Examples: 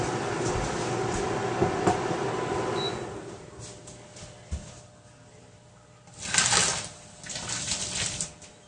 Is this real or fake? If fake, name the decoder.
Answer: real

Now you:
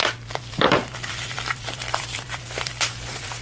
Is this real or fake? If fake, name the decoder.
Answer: fake, vocoder, BigVGAN v2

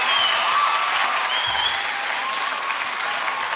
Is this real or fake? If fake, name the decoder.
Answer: real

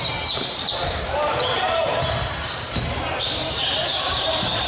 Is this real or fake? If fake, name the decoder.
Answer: fake, vocoder, BigVGAN v2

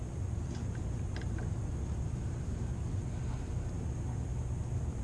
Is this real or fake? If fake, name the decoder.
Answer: real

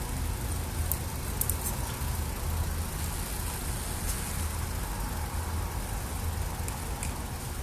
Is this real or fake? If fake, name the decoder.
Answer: real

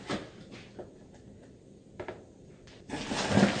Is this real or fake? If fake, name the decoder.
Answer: real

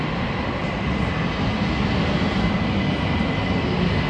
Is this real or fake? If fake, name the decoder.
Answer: real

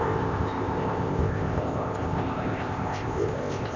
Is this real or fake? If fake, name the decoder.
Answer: fake, codec, ZipCodec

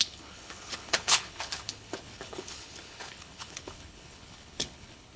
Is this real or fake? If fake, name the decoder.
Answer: fake, codec, HILCodec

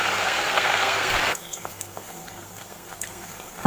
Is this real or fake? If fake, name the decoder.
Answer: fake, codec, SNAC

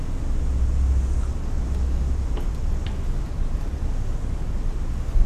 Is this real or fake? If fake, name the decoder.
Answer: real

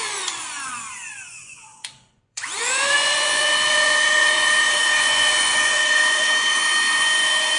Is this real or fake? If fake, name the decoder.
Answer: fake, vocoder, Vocos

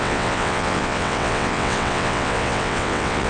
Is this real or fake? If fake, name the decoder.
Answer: fake, vocoder, WaveNeXt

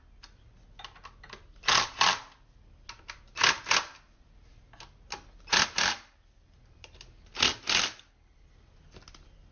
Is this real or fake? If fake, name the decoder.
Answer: real